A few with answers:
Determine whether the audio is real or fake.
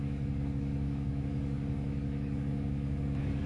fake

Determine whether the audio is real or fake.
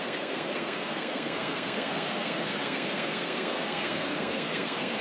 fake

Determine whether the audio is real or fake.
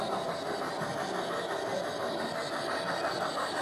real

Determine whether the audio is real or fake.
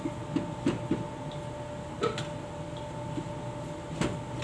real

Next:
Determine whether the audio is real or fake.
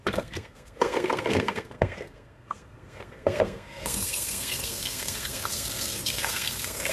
fake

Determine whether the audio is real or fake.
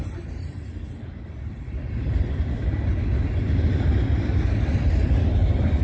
real